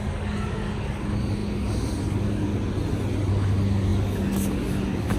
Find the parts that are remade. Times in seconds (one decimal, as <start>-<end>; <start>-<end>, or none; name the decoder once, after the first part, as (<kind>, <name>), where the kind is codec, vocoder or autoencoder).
0.0-2.5 (codec, DAC); 3.3-5.2

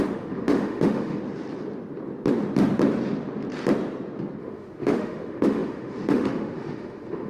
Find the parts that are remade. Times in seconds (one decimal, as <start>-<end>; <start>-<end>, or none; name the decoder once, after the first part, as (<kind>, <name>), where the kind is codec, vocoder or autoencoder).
0.0-1.2 (autoencoder, DAC-VAE); 4.4-7.3

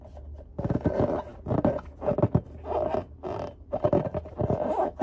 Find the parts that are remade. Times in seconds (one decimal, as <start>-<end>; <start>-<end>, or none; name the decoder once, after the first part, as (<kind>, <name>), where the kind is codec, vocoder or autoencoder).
none

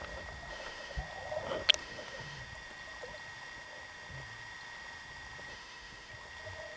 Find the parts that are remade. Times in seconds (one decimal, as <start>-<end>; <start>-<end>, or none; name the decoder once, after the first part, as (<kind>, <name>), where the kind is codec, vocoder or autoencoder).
0.5-1.0 (autoencoder, DAC-VAE); 1.8-2.4; 5.5-6.1

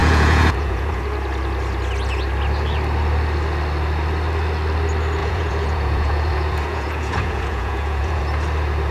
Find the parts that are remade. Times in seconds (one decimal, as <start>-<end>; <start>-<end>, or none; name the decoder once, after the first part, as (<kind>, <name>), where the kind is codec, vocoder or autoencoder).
0.0-1.0 (vocoder, Vocos); 5.2-8.2